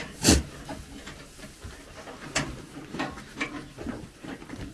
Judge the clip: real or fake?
real